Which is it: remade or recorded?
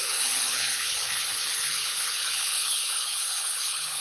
remade